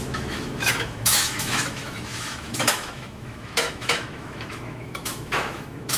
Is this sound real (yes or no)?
no